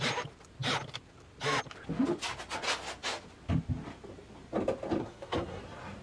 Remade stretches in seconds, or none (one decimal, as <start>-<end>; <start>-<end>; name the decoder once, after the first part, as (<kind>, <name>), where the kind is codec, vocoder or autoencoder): 5.0-5.6 (codec, SNAC)